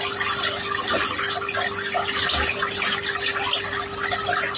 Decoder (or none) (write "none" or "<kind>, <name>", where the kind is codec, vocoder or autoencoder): none